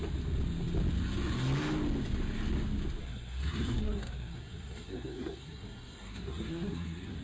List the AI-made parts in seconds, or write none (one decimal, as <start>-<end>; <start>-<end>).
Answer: 3.0-7.2